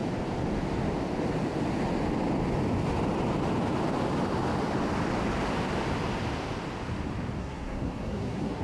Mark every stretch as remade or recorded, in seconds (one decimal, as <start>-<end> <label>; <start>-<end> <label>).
0.0-7.4 recorded; 7.4-8.6 remade